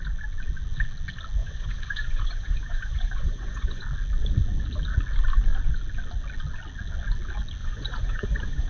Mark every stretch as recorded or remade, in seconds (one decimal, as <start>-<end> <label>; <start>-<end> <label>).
0.0-1.4 recorded; 1.4-3.8 remade; 3.8-7.6 recorded; 7.6-8.7 remade